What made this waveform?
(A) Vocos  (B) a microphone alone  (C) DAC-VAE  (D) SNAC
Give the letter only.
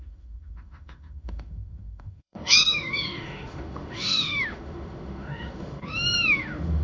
C